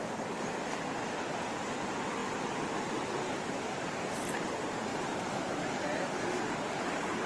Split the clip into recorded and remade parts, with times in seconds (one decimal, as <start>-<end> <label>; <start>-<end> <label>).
0.0-4.9 recorded; 4.9-6.8 remade; 6.8-7.3 recorded